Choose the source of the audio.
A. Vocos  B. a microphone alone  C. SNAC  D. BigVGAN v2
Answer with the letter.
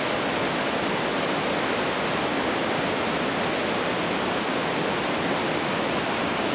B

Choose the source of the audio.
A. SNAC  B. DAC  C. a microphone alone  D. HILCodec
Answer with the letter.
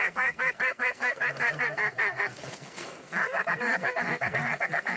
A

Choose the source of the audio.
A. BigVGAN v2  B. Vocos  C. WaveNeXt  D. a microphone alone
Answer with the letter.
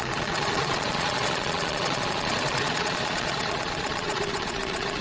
B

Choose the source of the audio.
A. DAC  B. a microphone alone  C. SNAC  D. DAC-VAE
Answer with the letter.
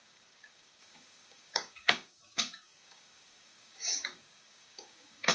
A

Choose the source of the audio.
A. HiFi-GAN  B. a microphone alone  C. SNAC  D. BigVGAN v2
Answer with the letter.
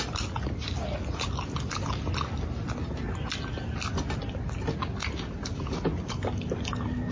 B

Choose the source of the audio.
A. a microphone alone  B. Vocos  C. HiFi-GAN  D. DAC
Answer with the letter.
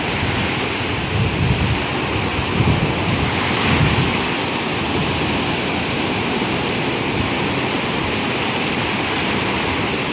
A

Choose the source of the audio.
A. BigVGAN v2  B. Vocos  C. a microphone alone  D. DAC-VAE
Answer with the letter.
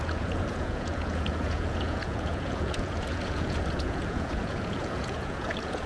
B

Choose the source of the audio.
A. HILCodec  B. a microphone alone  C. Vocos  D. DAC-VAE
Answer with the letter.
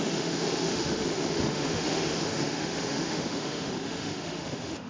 D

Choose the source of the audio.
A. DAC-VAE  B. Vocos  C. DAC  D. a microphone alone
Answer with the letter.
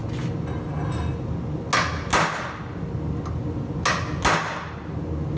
D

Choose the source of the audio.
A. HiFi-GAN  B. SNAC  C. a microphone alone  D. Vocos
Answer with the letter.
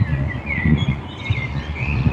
D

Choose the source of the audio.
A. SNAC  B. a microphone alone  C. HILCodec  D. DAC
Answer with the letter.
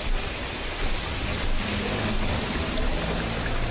B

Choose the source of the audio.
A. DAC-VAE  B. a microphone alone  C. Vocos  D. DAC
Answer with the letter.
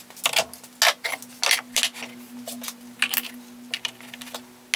B